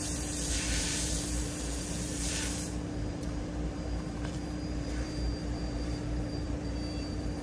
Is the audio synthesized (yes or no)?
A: yes